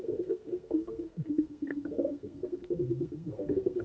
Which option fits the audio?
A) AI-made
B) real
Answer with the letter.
A